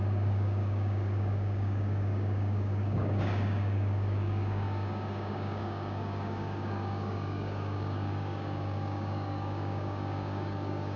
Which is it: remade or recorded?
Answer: remade